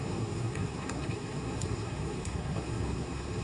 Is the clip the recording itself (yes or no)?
no